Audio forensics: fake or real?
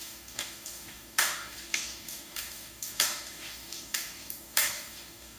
fake